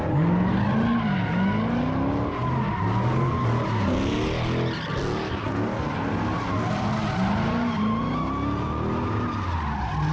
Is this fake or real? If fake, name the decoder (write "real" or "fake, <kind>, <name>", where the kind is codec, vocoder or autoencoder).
real